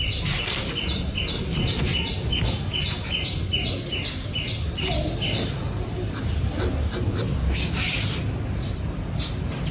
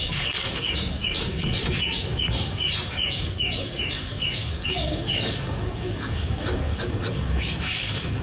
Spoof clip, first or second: second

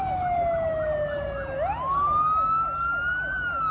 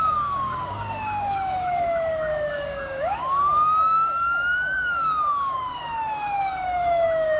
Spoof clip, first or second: second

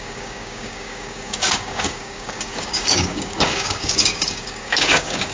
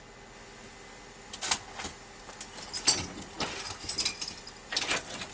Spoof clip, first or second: first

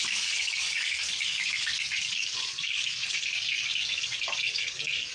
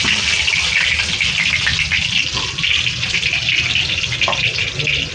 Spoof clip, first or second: first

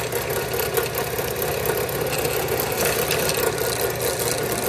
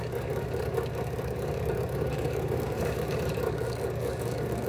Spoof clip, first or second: second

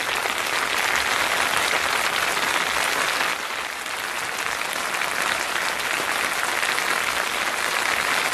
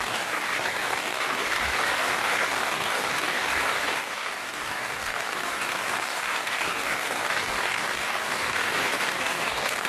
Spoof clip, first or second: second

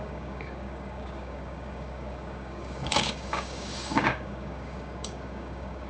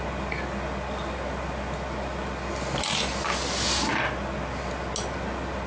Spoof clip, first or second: first